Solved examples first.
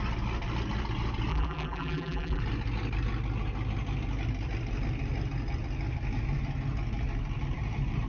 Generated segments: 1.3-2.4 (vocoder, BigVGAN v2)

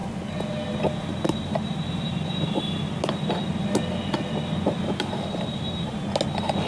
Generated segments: none

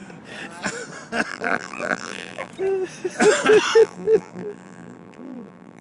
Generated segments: 1.3-2.5 (vocoder, BigVGAN v2); 3.8-5.8

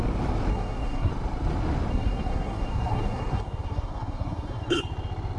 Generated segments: 0.5-1.1 (codec, SNAC); 1.9-4.8

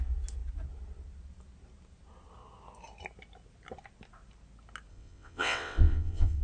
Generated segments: 4.9-6.4 (vocoder, WaveNeXt)